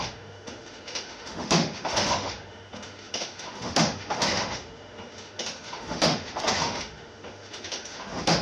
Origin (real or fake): fake